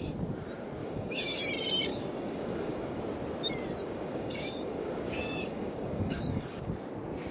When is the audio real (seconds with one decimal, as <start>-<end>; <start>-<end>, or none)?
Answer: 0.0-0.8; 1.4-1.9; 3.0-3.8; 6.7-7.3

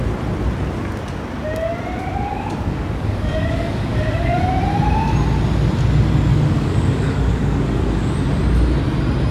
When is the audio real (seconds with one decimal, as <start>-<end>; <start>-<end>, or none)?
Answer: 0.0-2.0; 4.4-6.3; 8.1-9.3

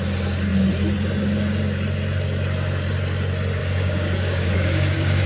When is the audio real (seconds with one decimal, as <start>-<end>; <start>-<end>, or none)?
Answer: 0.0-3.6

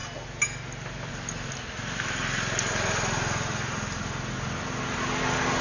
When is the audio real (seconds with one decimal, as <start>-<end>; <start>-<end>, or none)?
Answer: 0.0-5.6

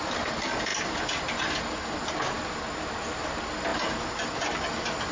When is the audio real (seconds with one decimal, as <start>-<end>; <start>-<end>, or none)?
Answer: 0.0-5.1

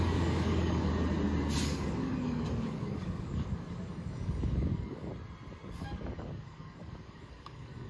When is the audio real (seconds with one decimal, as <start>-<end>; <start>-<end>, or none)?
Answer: 0.9-1.6; 5.1-5.7

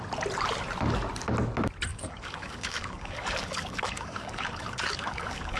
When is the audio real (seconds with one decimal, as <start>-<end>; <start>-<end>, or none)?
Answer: 0.0-1.9

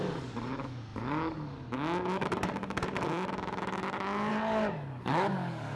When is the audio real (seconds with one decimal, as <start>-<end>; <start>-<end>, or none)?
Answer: none